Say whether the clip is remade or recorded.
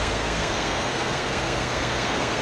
remade